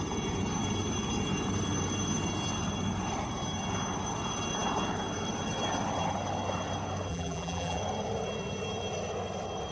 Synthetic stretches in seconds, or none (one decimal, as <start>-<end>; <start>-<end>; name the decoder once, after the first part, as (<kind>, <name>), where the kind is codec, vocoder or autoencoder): 7.1-7.8 (vocoder, BigVGAN v2)